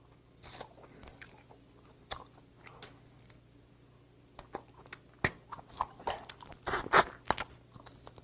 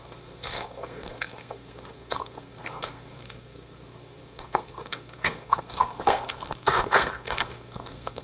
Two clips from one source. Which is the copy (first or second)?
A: second